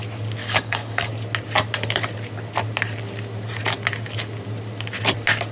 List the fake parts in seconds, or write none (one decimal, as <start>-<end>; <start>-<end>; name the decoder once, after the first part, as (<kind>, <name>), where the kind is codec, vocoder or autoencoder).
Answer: 0.4-1.1 (codec, DAC)